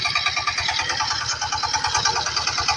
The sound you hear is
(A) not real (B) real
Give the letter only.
B